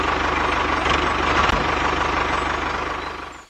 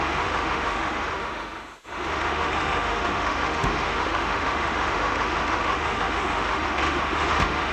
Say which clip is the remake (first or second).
second